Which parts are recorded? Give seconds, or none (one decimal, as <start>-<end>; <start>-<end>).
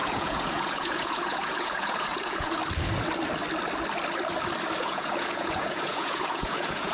2.6-4.8